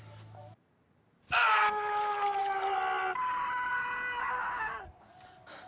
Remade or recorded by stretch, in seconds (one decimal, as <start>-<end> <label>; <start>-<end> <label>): 0.0-2.4 recorded; 2.4-3.7 remade; 3.7-4.4 recorded; 4.4-5.0 remade; 5.0-5.7 recorded